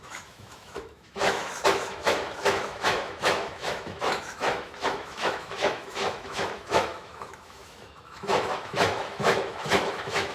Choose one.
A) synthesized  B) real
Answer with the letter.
A